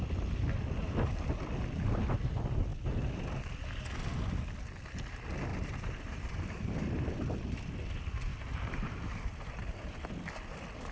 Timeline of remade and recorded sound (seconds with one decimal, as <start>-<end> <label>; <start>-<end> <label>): 0.0-5.5 recorded; 5.5-6.7 remade; 6.7-8.3 recorded; 8.3-9.8 remade; 9.8-10.9 recorded